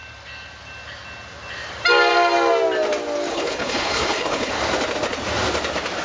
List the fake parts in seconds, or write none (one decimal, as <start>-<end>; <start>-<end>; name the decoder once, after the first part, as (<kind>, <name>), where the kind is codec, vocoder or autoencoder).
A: 3.3-4.5 (codec, HILCodec)